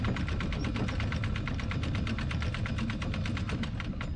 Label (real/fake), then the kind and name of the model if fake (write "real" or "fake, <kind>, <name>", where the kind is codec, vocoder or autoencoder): real